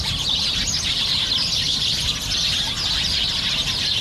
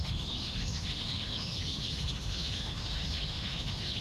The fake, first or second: second